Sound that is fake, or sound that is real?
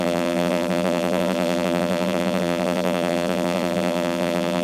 fake